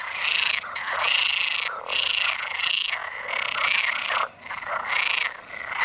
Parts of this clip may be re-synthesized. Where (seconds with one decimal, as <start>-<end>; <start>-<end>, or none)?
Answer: 0.0-5.8